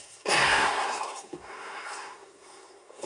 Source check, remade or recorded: remade